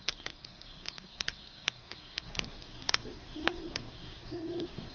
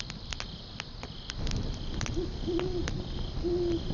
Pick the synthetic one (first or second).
first